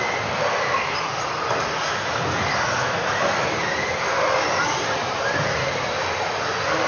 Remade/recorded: recorded